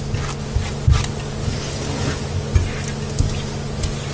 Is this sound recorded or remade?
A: recorded